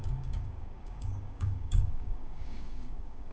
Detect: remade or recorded remade